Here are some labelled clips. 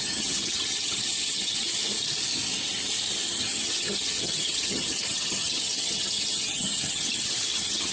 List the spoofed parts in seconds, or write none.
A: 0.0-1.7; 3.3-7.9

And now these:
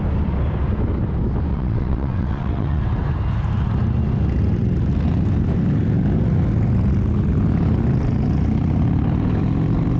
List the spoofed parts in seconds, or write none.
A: 1.5-2.8

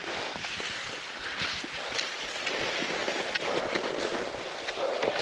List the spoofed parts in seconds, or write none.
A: none

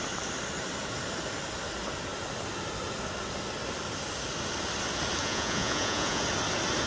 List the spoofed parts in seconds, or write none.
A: 5.2-6.2

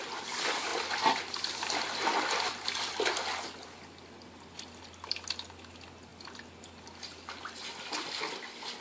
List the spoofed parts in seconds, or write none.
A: none

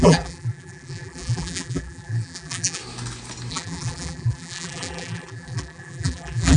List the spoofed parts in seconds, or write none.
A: 0.0-2.8; 3.5-6.6

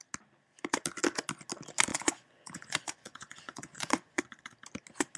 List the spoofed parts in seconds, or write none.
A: 1.9-4.4

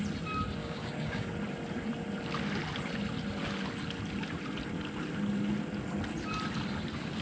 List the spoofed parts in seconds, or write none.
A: 0.6-1.3